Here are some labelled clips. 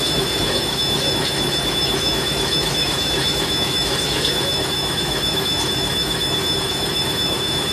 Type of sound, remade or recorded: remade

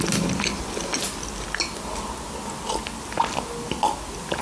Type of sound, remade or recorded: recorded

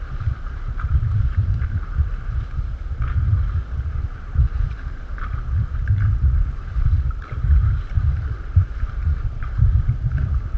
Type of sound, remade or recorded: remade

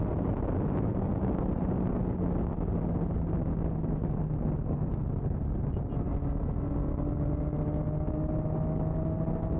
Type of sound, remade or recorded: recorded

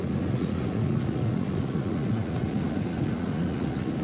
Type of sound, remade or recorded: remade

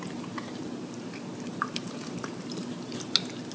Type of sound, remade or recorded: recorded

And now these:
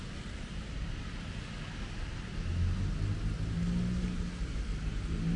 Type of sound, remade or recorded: recorded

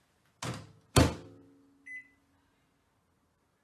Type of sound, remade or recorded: recorded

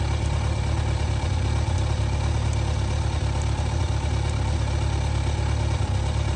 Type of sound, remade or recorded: recorded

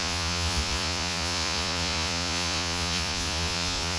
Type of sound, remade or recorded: remade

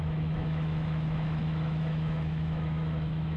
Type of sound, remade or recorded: remade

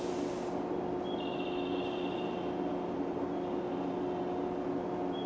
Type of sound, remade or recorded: recorded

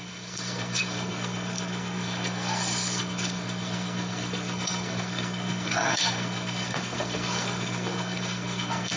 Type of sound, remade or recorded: remade